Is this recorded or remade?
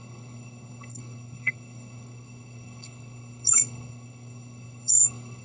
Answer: remade